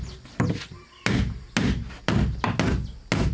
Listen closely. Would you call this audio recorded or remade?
recorded